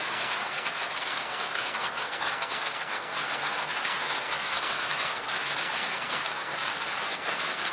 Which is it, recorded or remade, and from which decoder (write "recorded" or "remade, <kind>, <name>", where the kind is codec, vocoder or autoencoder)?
remade, codec, SNAC